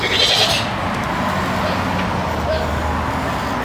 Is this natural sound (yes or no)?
yes